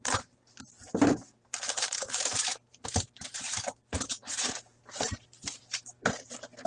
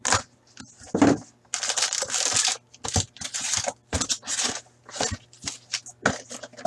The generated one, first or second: first